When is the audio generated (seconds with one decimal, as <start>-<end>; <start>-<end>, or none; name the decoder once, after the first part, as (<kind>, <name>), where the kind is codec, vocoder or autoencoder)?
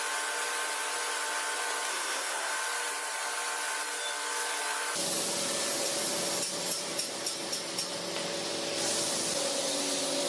1.9-2.5 (codec, SNAC)